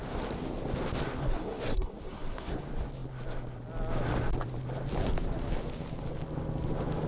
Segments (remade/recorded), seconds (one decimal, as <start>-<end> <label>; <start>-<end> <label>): 0.0-1.2 recorded; 1.2-2.6 remade; 2.6-7.1 recorded